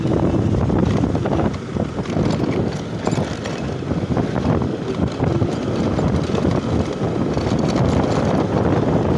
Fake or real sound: real